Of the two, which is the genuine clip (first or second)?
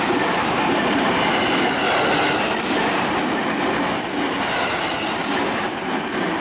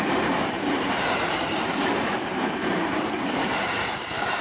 first